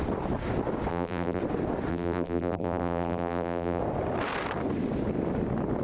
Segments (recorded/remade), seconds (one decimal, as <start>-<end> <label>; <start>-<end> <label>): 0.0-0.9 recorded; 0.9-1.4 remade; 1.4-1.9 recorded; 1.9-3.8 remade; 3.8-5.8 recorded